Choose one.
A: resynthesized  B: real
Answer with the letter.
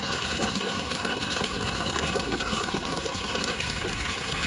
A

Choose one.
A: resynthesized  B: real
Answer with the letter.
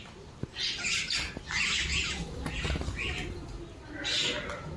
B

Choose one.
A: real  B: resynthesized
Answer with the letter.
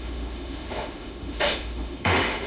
B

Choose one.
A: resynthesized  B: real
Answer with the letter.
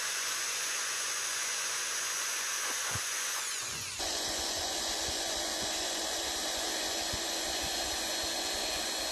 A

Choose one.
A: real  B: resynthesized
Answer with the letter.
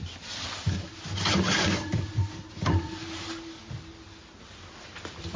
A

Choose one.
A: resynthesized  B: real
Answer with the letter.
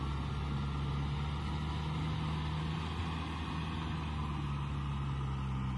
B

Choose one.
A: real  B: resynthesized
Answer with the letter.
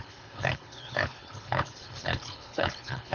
B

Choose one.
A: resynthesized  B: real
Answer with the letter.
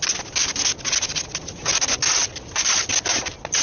B